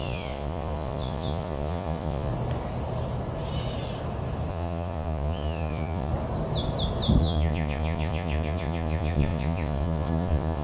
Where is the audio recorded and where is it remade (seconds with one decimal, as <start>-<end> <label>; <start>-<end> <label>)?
0.0-2.3 remade; 2.3-4.5 recorded; 4.5-6.1 remade; 6.1-7.2 recorded; 7.2-10.6 remade